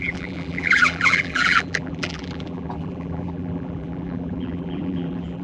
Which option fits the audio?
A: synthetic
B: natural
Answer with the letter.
A